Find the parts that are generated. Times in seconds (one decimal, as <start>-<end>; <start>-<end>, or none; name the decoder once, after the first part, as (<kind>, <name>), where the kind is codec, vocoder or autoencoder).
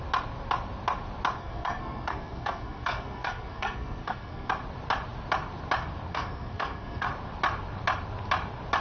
1.4-4.5 (codec, SNAC); 6.1-7.1